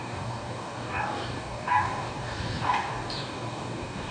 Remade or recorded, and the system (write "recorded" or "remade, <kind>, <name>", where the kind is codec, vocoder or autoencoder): remade, codec, DAC